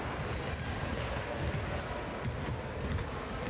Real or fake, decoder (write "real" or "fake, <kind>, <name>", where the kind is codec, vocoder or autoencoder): real